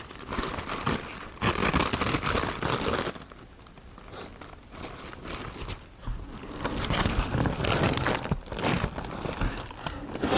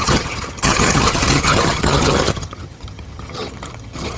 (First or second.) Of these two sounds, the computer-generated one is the second